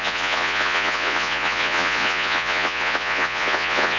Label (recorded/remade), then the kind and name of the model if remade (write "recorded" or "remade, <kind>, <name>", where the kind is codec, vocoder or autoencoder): remade, vocoder, Vocos